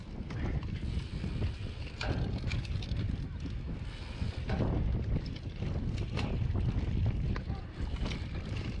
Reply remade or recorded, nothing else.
recorded